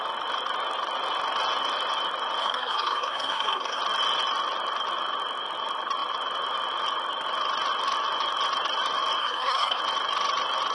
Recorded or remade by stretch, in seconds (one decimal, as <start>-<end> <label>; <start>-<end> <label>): 0.0-2.4 recorded; 2.4-3.8 remade; 3.8-9.2 recorded; 9.2-9.8 remade; 9.8-10.7 recorded

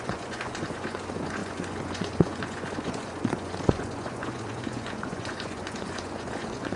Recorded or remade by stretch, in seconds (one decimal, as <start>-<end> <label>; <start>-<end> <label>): 0.0-6.8 remade

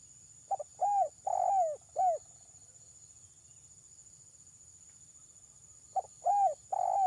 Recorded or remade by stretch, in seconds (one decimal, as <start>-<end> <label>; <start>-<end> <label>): 0.0-7.1 recorded

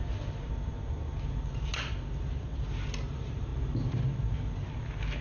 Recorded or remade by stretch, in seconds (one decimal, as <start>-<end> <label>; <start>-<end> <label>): 0.0-1.7 remade; 1.7-3.1 recorded; 3.1-3.5 remade; 3.5-5.2 recorded

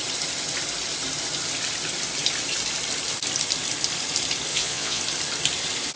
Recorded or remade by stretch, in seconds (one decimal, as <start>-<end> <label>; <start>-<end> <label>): 0.0-4.5 recorded; 4.5-5.0 remade; 5.0-6.0 recorded

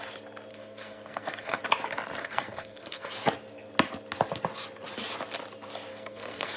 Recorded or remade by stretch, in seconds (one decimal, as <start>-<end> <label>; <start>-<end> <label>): 0.0-0.5 recorded; 0.5-1.6 remade; 1.6-2.2 recorded; 2.2-3.1 remade; 3.1-5.9 recorded; 5.9-6.6 remade

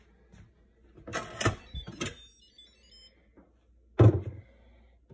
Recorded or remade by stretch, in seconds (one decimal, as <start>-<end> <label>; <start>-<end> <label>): 0.0-5.1 recorded